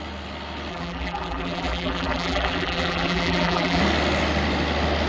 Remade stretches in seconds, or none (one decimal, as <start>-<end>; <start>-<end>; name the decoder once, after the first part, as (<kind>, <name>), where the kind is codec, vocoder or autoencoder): 0.7-3.8 (vocoder, BigVGAN v2)